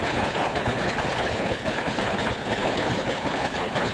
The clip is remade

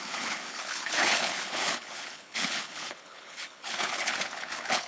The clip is remade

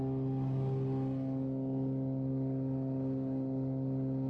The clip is recorded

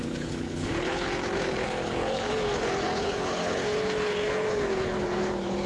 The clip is remade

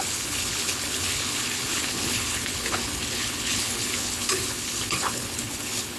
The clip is remade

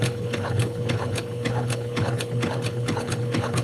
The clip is remade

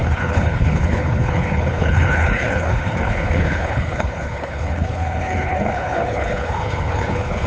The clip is remade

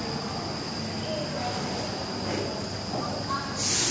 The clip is recorded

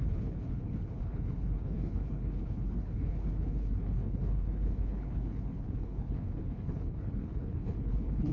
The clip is remade